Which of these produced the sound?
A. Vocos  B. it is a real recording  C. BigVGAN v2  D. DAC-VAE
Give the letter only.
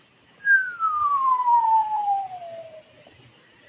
C